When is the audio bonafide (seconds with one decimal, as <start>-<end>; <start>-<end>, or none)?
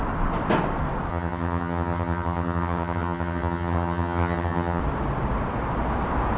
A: 0.0-1.1; 4.8-6.4